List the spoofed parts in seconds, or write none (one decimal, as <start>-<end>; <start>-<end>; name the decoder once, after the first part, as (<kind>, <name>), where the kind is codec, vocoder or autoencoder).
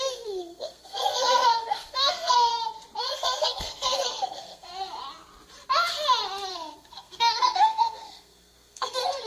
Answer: 0.0-2.5 (codec, SNAC); 3.0-4.7; 6.5-9.3